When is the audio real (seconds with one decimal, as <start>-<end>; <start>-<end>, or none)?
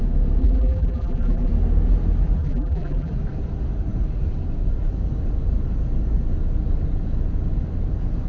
0.0-0.4; 1.5-2.4; 3.1-8.3